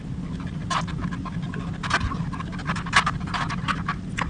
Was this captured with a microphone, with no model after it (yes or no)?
yes